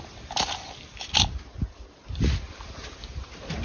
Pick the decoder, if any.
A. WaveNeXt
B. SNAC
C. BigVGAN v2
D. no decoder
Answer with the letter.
D